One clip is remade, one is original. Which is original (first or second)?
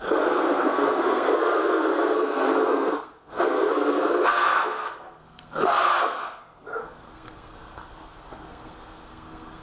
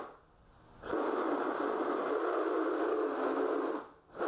second